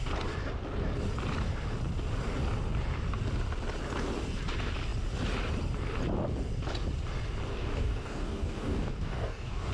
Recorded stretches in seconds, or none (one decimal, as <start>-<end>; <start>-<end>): 0.0-7.5